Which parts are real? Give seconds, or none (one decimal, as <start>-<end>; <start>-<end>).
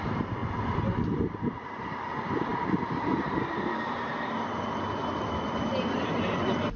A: 0.0-6.8